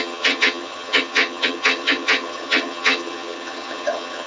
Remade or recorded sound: remade